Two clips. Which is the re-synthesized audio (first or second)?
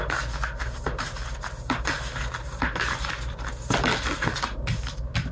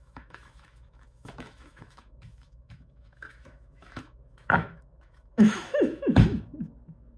second